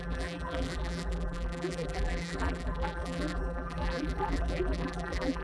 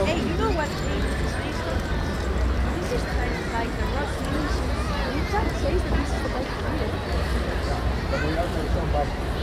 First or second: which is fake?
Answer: first